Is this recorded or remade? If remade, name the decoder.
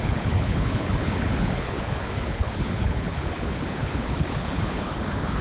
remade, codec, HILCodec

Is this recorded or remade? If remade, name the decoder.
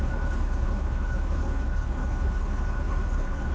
remade, codec, HILCodec